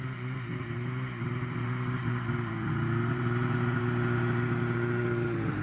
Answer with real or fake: fake